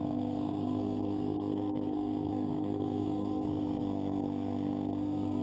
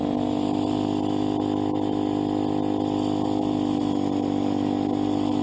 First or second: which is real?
second